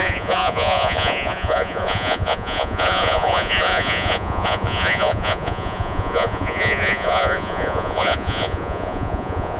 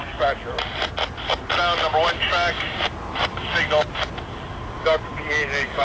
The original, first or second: second